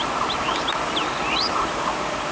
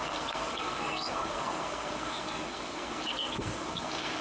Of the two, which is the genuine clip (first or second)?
first